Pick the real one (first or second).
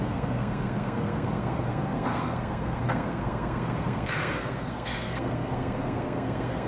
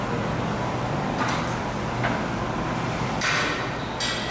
second